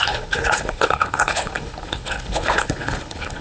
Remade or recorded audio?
remade